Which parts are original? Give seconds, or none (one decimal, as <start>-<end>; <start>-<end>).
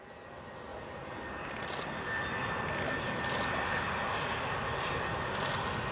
0.0-0.7; 1.3-5.9